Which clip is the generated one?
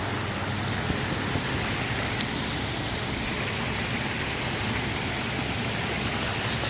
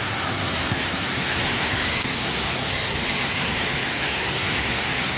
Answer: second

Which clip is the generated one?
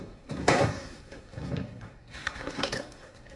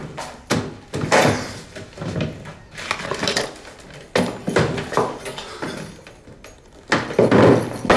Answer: first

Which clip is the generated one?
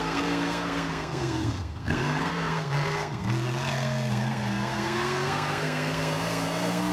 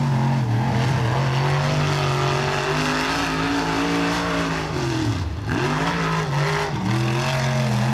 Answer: first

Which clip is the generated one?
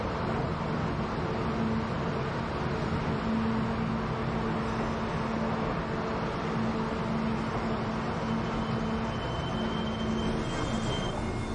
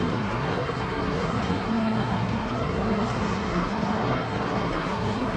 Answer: second